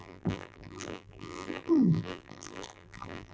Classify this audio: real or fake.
fake